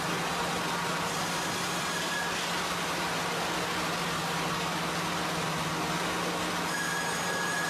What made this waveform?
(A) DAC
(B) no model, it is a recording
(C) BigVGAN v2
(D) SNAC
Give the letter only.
B